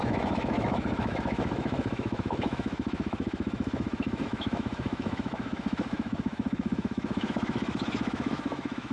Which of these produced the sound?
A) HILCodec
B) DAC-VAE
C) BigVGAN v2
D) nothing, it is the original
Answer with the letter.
B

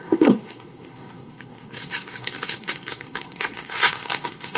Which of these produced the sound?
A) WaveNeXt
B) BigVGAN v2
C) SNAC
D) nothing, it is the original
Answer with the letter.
C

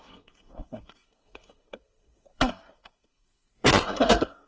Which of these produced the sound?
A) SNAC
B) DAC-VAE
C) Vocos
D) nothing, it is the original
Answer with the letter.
A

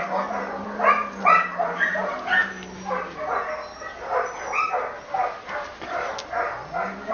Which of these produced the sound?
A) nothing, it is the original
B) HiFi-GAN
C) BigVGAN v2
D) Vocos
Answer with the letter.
A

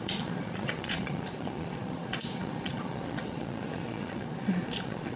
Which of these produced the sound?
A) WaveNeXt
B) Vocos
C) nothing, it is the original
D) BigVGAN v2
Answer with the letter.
B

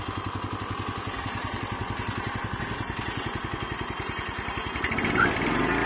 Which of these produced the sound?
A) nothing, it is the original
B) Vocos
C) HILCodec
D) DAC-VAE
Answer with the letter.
A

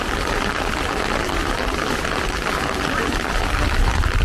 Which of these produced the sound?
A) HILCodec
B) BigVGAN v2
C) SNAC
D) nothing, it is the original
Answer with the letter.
D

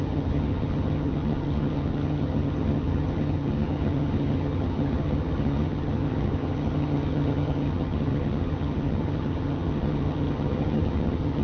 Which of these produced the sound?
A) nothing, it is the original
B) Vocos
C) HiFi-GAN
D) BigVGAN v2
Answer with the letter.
C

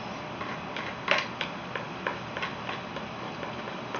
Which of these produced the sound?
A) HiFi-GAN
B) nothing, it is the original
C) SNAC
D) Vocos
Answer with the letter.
B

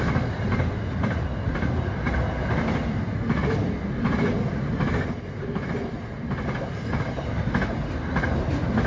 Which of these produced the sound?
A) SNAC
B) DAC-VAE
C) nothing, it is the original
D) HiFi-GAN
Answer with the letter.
C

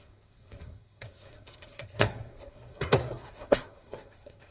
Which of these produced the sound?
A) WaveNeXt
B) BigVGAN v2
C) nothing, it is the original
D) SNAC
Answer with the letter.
D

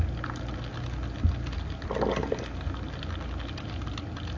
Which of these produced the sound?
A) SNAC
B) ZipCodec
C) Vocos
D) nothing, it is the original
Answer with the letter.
D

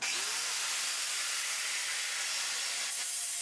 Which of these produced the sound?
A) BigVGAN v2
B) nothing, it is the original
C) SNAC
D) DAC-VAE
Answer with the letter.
B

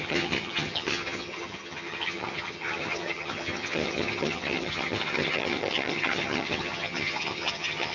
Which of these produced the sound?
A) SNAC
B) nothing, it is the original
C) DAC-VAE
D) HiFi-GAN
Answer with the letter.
D